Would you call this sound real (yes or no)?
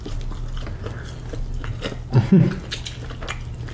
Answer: yes